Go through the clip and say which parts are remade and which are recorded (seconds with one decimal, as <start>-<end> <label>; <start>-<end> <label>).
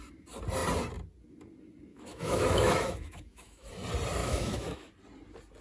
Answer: 0.0-1.9 recorded; 1.9-3.7 remade; 3.7-4.2 recorded; 4.2-4.9 remade; 4.9-5.6 recorded